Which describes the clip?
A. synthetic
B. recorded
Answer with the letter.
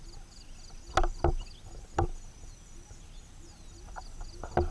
B